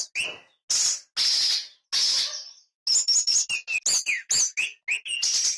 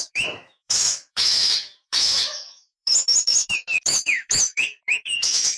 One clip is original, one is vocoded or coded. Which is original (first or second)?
first